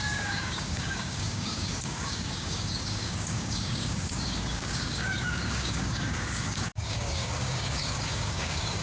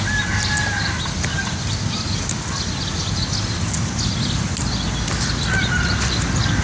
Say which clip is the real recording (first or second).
second